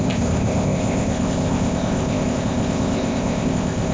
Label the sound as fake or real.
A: fake